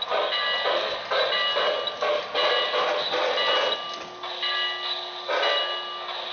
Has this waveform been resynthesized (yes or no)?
no